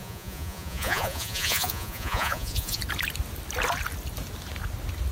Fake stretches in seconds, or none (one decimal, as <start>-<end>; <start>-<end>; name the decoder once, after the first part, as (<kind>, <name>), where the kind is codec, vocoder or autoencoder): 0.0-2.8 (vocoder, Vocos)